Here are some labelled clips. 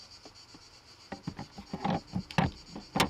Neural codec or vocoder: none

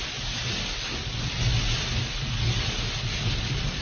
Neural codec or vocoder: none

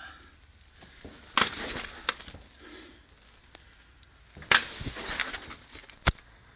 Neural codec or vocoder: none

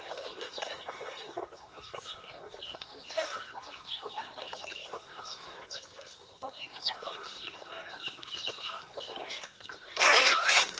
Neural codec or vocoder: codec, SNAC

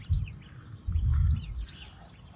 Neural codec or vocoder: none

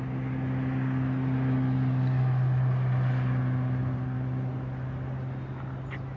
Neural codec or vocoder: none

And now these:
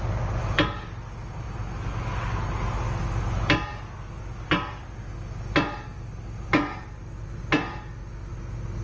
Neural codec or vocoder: none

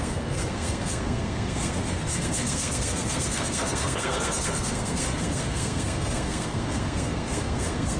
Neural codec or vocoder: codec, SNAC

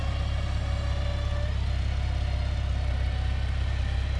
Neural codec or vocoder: none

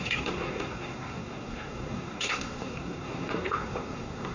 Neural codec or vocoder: codec, SNAC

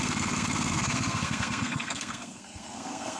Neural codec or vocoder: codec, SNAC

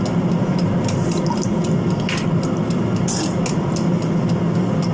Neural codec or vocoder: none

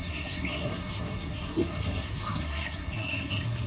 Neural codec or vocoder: codec, SNAC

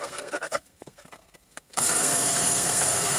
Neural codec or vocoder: codec, SNAC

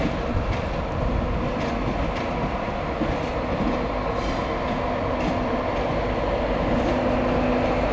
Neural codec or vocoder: none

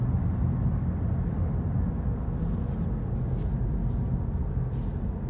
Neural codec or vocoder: none